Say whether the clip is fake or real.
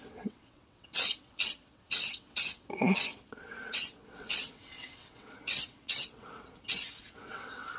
fake